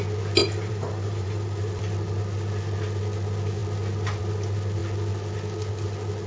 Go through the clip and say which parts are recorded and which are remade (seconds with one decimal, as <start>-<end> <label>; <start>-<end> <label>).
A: 0.0-0.4 recorded; 0.4-1.8 remade; 1.8-6.3 recorded